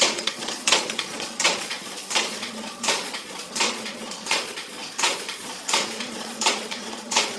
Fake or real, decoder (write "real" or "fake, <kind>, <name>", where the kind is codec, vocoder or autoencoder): fake, vocoder, Vocos